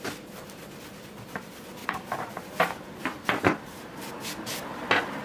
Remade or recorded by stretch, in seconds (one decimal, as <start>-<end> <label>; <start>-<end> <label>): 0.0-1.8 recorded; 1.8-4.1 remade; 4.1-5.2 recorded